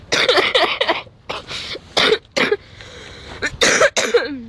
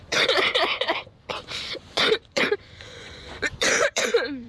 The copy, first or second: second